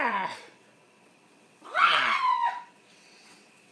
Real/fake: fake